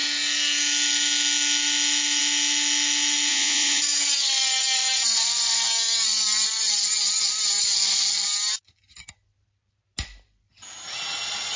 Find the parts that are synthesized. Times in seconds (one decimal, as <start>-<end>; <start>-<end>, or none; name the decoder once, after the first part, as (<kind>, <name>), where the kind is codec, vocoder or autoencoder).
3.3-3.8 (vocoder, Vocos)